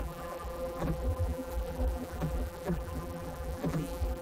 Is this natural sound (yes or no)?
no